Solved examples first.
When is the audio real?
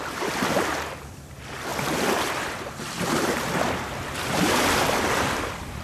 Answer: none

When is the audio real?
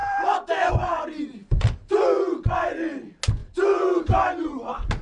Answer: 0.7-1.4; 2.5-3.4; 4.0-5.0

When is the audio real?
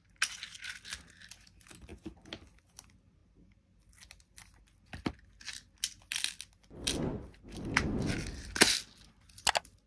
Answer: 0.0-9.9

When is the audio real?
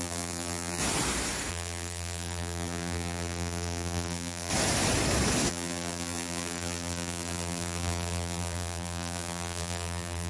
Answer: 0.8-1.5; 4.5-5.5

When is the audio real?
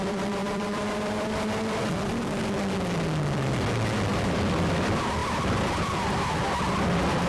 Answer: 2.1-4.1